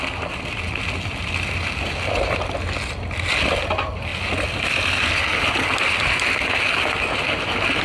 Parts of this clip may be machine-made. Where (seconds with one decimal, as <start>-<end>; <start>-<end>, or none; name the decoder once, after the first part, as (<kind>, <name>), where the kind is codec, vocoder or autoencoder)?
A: none